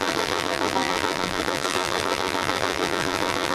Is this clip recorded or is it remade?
remade